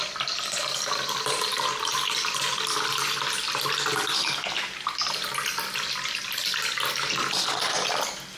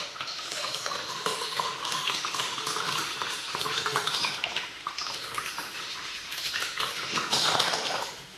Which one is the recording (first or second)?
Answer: first